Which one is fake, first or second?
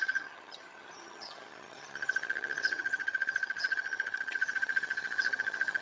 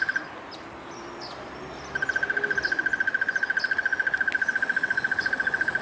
first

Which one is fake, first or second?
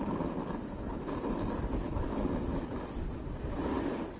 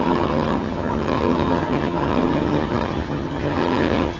second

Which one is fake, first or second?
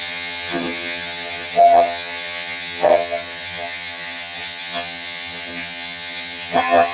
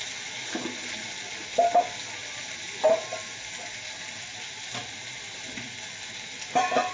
first